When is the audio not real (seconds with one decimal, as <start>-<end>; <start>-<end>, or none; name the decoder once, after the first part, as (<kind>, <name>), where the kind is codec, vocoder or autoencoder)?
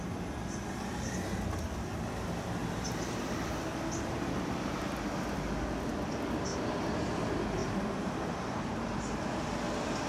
2.6-3.6 (vocoder, BigVGAN v2); 6.5-7.1; 7.6-9.5